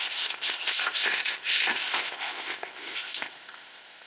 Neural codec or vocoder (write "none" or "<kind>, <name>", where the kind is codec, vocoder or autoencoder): codec, ZipCodec